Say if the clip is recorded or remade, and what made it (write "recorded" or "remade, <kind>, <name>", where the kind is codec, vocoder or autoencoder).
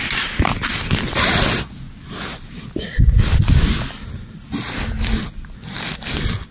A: recorded